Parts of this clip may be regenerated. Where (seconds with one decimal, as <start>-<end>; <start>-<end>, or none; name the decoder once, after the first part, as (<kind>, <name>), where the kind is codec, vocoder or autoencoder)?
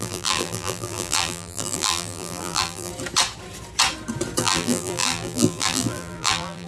0.0-2.9 (vocoder, BigVGAN v2); 4.4-6.7